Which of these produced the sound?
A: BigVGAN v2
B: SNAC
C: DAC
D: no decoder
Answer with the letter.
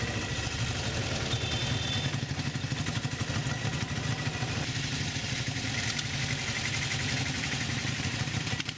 D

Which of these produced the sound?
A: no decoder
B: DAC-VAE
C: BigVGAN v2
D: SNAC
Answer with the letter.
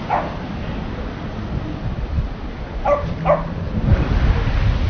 A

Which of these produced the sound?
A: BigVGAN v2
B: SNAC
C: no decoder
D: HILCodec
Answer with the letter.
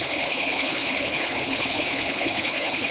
D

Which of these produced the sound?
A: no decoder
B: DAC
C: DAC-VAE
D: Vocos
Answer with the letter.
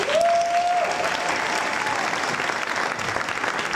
A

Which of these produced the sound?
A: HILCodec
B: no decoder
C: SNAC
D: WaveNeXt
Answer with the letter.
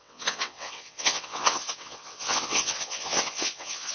D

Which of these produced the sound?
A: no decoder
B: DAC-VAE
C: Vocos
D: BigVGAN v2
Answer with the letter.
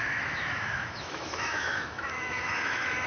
B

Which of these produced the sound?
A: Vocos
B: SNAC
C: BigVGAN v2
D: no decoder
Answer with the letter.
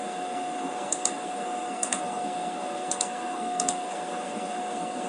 B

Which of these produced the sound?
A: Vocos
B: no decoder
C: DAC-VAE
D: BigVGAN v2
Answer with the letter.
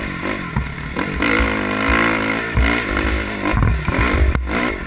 B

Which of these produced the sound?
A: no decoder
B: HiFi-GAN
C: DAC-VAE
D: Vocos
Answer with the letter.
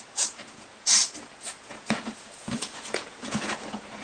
D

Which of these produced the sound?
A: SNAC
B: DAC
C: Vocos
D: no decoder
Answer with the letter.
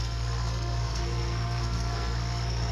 A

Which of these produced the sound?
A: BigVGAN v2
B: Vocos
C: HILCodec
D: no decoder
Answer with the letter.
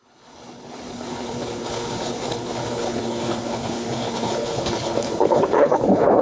C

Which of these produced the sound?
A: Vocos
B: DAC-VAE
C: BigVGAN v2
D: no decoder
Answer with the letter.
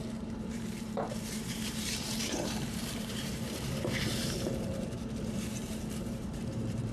C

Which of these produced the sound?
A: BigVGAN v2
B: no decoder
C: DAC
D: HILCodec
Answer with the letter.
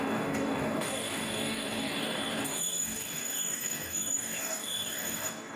C